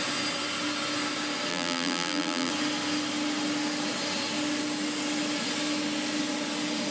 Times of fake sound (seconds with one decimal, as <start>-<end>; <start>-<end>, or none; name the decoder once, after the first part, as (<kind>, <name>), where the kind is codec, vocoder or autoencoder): 1.5-2.5 (vocoder, BigVGAN v2)